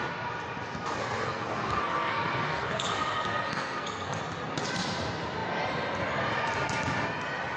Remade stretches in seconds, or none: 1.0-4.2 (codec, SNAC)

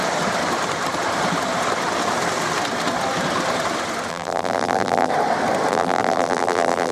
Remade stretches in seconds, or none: 4.1-5.1 (vocoder, BigVGAN v2); 5.7-6.9

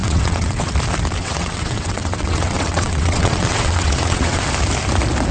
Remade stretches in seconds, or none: 0.0-0.7 (vocoder, WaveNeXt); 1.2-4.4

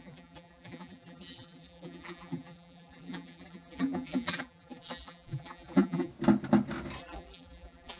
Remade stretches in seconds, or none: 0.0-6.1 (vocoder, BigVGAN v2); 7.0-8.0

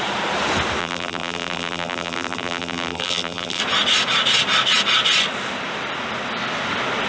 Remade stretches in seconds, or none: 0.8-3.6 (vocoder, BigVGAN v2)

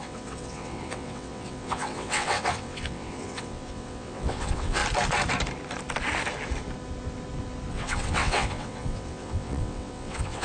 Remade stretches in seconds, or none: 0.0-4.8 (vocoder, WaveNeXt); 7.7-10.4

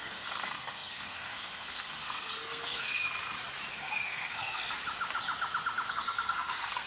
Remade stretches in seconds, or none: 0.0-3.0 (codec, SNAC); 3.7-4.8; 5.9-6.9

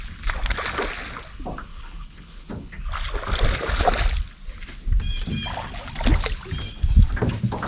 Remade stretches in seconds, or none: 1.7-2.7 (codec, HILCodec)